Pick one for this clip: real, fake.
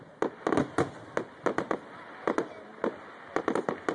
real